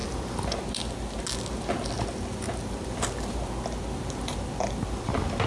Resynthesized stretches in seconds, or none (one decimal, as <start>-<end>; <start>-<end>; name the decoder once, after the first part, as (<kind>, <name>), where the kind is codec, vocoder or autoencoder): none